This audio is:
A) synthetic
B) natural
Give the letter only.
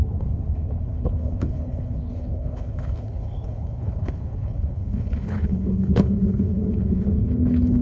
A